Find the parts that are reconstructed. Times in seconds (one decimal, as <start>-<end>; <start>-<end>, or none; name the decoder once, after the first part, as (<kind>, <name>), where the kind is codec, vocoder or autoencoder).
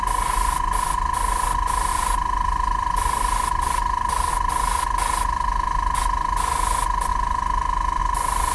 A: 1.9-4.3 (vocoder, BigVGAN v2)